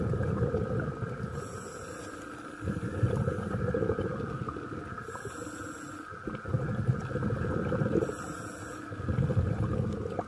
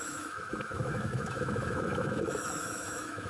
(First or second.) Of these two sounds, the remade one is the second